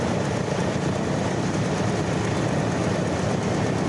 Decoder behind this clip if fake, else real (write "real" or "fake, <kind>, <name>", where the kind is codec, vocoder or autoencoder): real